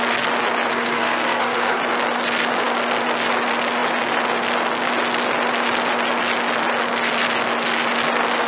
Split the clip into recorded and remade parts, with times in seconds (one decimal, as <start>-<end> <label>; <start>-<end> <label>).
0.0-0.7 recorded; 0.7-1.8 remade; 1.8-8.5 recorded